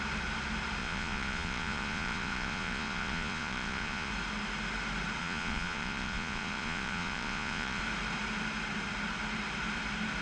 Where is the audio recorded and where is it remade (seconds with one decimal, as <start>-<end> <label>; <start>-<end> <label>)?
0.0-0.8 recorded; 0.8-4.1 remade; 4.1-5.2 recorded; 5.2-7.8 remade; 7.8-10.2 recorded